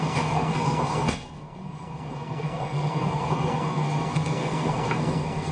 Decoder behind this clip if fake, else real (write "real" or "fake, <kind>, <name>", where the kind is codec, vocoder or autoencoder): fake, codec, SNAC